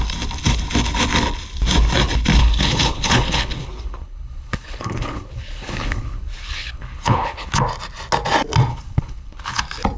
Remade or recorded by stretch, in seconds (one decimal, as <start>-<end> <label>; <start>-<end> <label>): 0.0-2.4 recorded; 2.4-7.6 remade; 7.6-8.7 recorded; 8.7-9.6 remade; 9.6-10.0 recorded